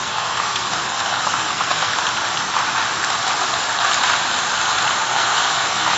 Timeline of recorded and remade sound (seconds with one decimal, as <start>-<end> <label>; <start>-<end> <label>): 0.0-1.9 remade; 1.9-5.0 recorded; 5.0-6.0 remade